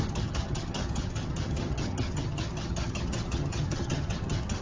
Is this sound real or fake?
fake